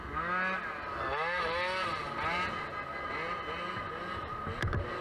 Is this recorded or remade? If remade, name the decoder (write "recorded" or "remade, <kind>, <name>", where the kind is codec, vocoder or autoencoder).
recorded